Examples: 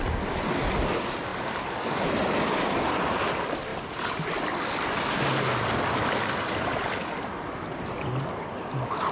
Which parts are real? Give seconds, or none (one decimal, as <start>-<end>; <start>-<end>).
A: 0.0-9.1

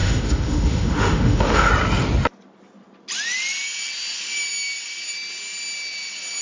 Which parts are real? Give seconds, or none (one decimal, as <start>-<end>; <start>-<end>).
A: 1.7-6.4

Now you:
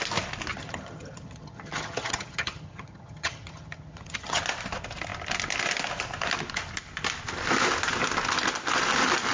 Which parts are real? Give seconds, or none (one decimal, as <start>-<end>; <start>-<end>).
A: 0.0-0.5; 4.4-9.3

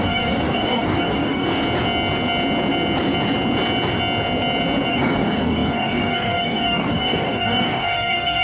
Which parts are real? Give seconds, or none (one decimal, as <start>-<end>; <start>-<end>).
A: 1.5-4.9

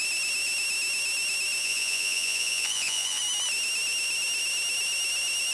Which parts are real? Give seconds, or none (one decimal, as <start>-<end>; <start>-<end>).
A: 0.0-1.6; 3.2-5.5